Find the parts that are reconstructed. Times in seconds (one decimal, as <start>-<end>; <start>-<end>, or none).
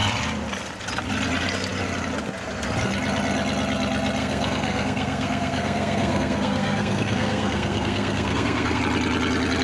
4.2-8.8